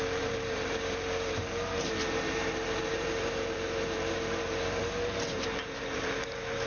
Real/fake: fake